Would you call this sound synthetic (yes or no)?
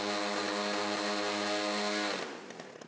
no